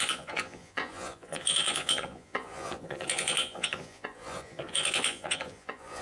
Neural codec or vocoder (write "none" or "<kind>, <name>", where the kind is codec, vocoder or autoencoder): vocoder, Vocos